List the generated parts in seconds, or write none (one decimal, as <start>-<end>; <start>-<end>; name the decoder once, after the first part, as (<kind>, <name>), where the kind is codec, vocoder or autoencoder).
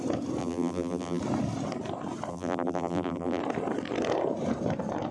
0.4-1.2 (vocoder, BigVGAN v2); 2.3-3.4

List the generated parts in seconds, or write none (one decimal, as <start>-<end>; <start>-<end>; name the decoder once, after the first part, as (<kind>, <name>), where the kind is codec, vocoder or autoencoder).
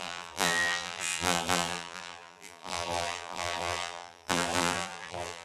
0.0-5.4 (vocoder, BigVGAN v2)